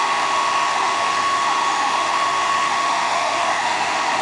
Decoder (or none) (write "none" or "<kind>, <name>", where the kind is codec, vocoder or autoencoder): autoencoder, DAC-VAE